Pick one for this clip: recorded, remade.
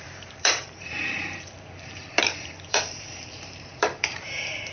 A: remade